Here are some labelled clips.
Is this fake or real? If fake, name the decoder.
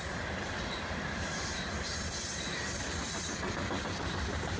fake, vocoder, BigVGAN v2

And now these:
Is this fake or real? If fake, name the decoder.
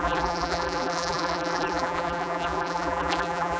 fake, vocoder, BigVGAN v2